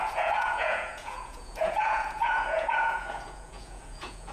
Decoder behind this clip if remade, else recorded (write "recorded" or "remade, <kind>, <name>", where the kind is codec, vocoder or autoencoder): remade, vocoder, Vocos